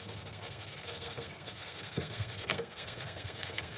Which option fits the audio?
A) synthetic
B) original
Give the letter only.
A